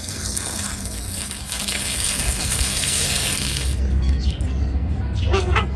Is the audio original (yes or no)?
no